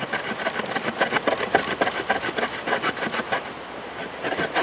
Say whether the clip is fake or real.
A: real